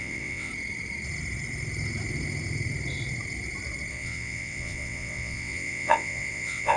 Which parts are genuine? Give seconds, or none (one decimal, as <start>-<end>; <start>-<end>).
0.5-3.9